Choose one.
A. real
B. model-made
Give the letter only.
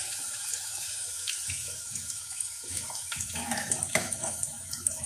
B